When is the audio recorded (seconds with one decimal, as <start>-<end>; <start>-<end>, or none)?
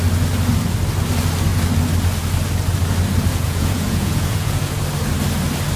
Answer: 0.0-3.3; 4.7-5.8